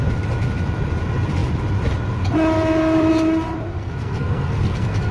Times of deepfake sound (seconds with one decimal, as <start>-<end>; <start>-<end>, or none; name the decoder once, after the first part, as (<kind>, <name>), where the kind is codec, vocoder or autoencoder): 3.7-5.1 (codec, SNAC)